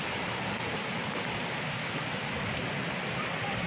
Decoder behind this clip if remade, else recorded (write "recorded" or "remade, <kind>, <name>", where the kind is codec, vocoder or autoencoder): recorded